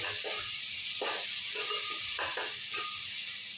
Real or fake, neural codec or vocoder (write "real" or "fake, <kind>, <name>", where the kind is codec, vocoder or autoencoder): real